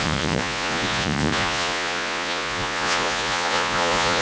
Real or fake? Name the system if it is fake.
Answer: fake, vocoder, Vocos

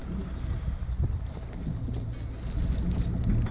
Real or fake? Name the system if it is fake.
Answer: real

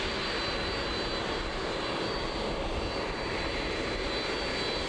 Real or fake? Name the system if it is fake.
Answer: real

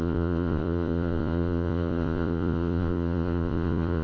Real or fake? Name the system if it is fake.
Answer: fake, vocoder, Vocos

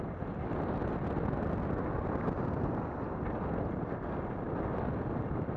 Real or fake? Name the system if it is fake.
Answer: real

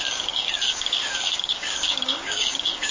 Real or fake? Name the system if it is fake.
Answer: fake, codec, DAC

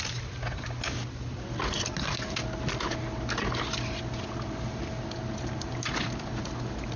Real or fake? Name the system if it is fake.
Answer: real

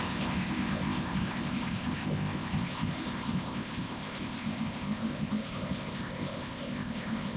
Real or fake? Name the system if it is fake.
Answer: fake, codec, ZipCodec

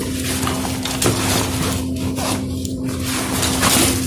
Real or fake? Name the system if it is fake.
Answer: real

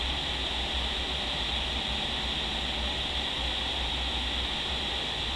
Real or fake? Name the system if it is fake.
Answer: real